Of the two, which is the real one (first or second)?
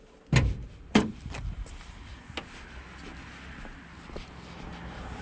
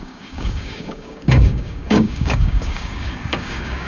first